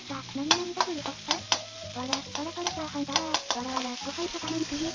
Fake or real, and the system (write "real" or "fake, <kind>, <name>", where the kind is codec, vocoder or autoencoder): fake, vocoder, BigVGAN v2